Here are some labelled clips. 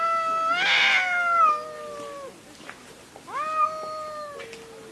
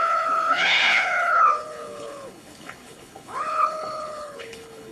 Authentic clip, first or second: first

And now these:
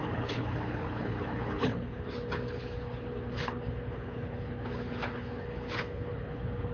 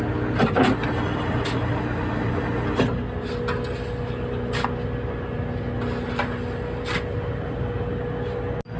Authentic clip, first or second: second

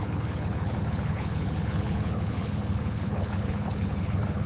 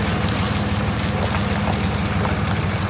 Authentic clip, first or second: second